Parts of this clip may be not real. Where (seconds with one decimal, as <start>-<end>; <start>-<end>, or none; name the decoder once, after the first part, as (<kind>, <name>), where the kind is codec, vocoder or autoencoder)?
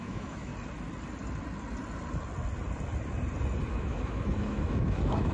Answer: 0.0-0.5 (autoencoder, DAC-VAE); 3.7-5.3